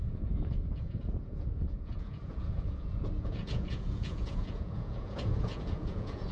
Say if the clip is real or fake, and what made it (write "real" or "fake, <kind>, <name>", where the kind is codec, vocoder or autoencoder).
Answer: fake, vocoder, Vocos